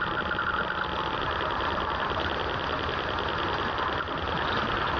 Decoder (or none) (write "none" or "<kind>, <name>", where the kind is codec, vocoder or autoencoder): none